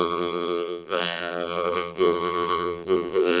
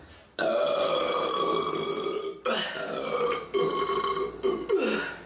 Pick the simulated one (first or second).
first